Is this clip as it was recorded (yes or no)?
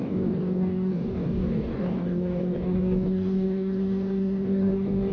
no